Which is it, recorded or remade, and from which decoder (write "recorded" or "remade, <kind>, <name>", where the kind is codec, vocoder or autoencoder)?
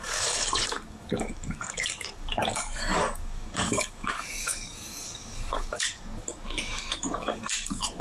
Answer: remade, codec, DAC